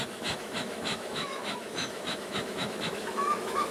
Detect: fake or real fake